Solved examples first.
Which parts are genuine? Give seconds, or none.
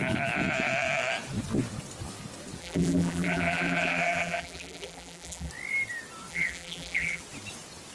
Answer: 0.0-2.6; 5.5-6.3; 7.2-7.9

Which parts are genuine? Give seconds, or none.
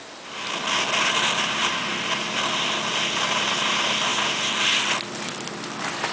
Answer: 0.0-6.1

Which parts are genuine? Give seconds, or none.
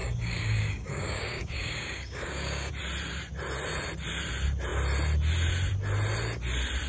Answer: 2.7-6.9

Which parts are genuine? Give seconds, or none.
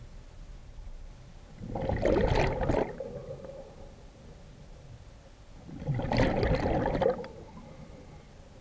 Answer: 0.0-0.6; 1.1-8.6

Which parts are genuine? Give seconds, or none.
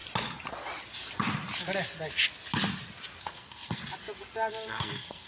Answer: 0.0-3.2; 3.8-4.5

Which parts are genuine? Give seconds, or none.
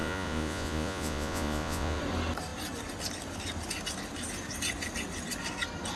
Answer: 2.0-6.0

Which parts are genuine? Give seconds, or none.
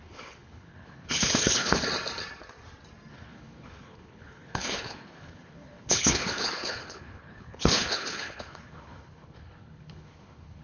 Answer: 1.8-3.1